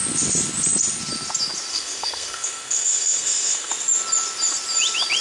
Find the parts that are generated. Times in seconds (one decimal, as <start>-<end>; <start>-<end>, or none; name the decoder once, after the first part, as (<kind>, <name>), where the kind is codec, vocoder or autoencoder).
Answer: 1.7-3.7 (codec, SNAC)